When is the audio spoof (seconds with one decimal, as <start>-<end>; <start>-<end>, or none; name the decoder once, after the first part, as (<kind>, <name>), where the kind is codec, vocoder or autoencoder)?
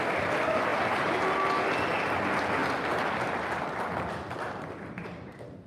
0.7-1.2 (vocoder, BigVGAN v2)